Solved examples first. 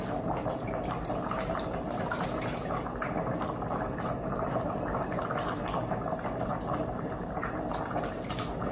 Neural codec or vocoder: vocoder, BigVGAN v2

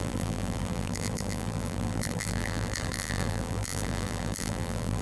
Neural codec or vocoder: vocoder, BigVGAN v2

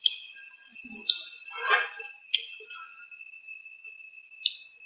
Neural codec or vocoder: none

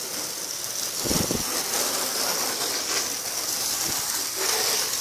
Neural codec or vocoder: vocoder, BigVGAN v2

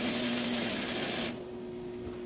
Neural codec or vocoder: none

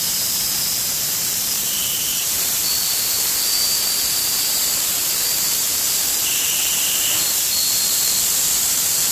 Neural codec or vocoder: vocoder, BigVGAN v2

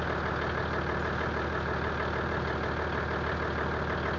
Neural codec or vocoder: none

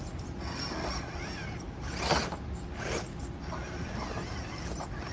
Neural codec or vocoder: none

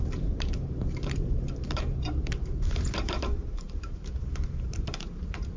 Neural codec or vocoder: vocoder, BigVGAN v2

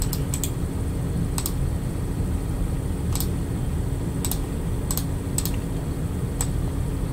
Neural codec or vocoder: none